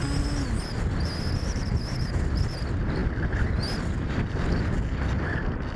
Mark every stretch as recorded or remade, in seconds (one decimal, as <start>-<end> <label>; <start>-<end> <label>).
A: 0.0-5.8 recorded